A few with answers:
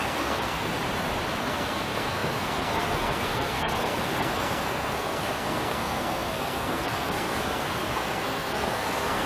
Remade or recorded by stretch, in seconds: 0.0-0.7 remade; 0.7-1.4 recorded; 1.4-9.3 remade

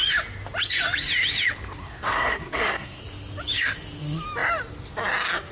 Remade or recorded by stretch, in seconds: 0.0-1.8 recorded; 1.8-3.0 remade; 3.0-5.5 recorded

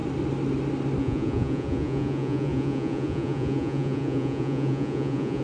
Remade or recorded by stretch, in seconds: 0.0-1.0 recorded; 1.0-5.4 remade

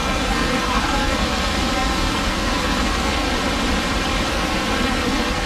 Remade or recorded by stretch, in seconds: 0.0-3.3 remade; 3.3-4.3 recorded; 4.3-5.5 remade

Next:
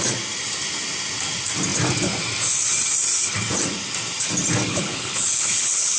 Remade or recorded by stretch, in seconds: 0.0-4.7 recorded; 4.7-6.0 remade

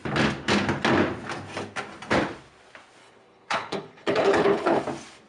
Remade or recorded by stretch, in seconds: 0.0-3.0 recorded; 3.0-4.8 remade; 4.8-5.3 recorded

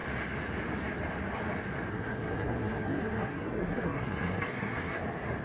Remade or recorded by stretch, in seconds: 0.0-1.9 recorded; 1.9-5.0 remade; 5.0-5.4 recorded

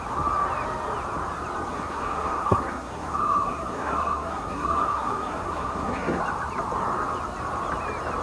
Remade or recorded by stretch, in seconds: 0.0-1.7 recorded; 1.7-6.2 remade; 6.2-8.2 recorded